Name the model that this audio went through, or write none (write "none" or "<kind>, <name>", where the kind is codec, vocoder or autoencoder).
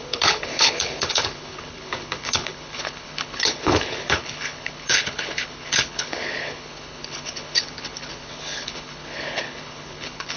codec, HILCodec